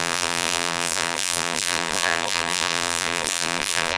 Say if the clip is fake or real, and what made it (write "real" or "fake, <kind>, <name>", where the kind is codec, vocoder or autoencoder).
fake, vocoder, BigVGAN v2